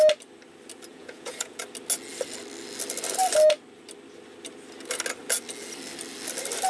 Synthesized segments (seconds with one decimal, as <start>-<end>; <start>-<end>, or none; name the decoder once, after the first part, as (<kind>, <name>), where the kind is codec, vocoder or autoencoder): 0.9-1.6 (vocoder, Vocos)